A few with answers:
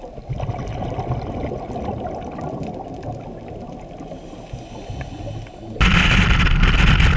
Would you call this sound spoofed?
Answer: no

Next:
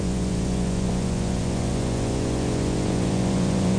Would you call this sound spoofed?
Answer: yes